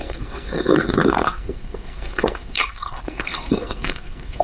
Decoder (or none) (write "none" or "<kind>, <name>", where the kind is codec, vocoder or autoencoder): codec, SNAC